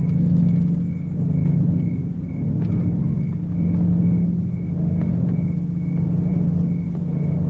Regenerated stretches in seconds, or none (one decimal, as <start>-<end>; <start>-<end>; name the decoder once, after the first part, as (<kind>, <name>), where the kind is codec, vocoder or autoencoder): none